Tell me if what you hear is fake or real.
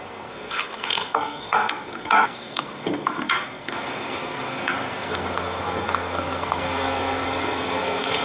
fake